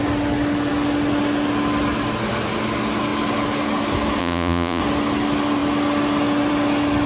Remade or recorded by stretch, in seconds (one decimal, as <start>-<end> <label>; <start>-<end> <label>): 0.0-4.2 recorded; 4.2-4.8 remade; 4.8-7.1 recorded